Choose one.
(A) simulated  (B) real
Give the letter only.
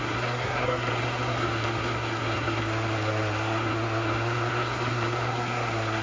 A